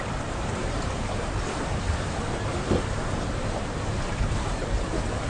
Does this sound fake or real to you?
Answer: fake